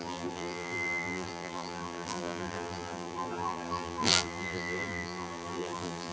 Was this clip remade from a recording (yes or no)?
yes